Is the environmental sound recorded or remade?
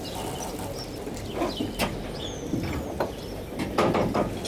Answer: recorded